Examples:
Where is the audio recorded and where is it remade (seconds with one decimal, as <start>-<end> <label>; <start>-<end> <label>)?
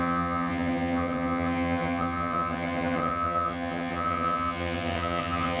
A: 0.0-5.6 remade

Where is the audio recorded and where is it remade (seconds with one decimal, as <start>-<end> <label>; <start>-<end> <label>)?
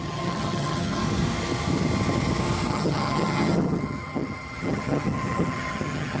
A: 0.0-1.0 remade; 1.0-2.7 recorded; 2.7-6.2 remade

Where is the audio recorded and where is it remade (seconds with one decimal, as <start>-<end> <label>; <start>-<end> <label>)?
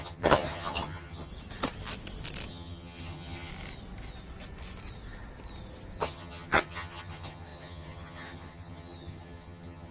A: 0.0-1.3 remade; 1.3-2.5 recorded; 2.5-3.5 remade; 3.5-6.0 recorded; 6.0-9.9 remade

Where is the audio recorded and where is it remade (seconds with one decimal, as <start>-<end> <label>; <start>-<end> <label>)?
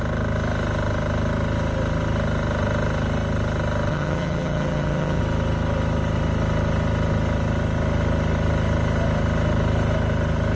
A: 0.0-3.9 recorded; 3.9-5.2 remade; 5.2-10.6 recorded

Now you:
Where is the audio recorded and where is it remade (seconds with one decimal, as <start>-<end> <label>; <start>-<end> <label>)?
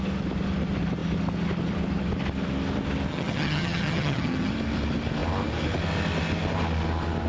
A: 0.0-3.1 recorded; 3.1-4.5 remade; 4.5-7.3 recorded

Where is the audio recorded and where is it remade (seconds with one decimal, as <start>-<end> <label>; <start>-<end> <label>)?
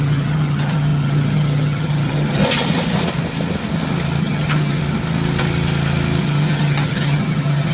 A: 0.0-2.4 remade; 2.4-4.2 recorded; 4.2-4.8 remade; 4.8-6.2 recorded; 6.2-7.7 remade